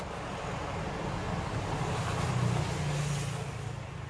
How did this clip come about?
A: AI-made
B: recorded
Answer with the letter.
B